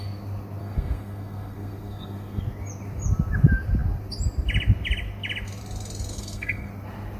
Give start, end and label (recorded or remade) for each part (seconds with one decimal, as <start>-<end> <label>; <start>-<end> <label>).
0.0-0.6 recorded; 0.6-2.4 remade; 2.4-6.1 recorded; 6.1-6.7 remade; 6.7-7.2 recorded